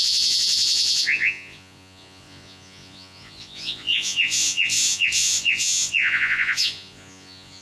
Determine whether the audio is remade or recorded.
remade